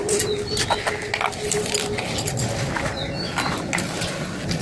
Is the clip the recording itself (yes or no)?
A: yes